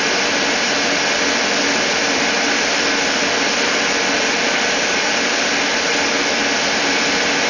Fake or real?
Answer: real